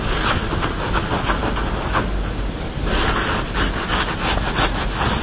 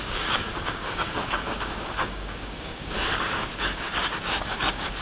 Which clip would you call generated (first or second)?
second